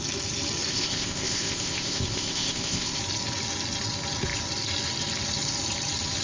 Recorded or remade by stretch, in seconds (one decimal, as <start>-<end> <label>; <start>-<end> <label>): 0.0-0.7 recorded; 0.7-3.0 remade; 3.0-6.2 recorded